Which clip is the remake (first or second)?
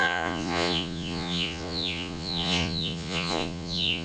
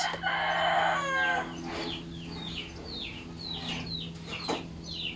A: first